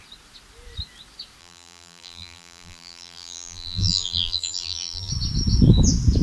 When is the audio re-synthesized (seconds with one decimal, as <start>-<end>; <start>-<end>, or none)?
1.4-5.1